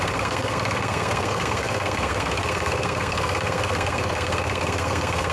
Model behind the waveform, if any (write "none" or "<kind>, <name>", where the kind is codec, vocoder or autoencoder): codec, SNAC